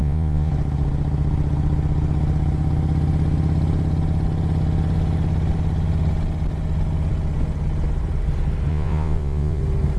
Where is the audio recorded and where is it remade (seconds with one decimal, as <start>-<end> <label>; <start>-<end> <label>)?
0.0-0.5 remade; 0.5-8.7 recorded; 8.7-9.6 remade; 9.6-10.0 recorded